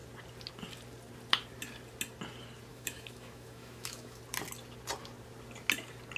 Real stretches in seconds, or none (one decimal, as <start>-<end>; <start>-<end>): 0.0-2.7; 4.2-6.2